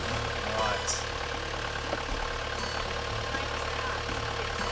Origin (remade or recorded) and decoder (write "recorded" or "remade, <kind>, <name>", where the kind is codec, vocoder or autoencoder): recorded